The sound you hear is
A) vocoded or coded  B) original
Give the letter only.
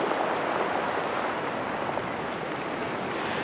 B